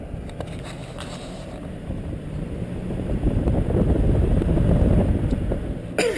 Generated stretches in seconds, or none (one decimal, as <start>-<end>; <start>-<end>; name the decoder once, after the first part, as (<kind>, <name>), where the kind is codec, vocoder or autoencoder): 0.8-4.5 (vocoder, BigVGAN v2)